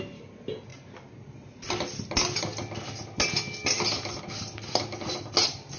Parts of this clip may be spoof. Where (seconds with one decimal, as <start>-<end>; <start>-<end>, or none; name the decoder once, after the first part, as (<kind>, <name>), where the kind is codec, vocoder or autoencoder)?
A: none